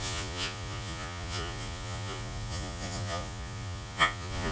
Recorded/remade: remade